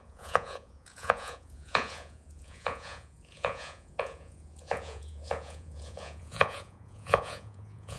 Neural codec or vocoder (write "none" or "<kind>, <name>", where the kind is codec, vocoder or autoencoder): vocoder, Vocos